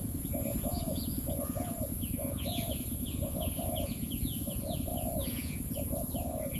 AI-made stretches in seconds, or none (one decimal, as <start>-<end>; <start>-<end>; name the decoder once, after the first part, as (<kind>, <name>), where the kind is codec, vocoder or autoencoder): 0.0-6.6 (vocoder, Vocos)